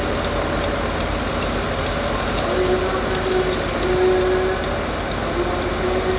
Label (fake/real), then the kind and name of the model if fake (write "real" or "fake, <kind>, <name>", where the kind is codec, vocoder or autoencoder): real